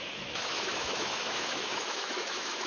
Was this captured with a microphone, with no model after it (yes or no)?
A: no